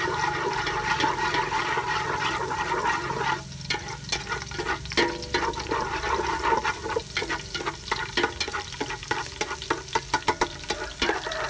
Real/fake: real